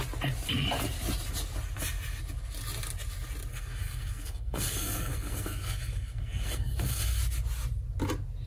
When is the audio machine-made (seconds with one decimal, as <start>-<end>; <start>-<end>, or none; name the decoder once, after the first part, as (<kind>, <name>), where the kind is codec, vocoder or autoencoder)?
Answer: 3.5-7.2 (codec, SNAC)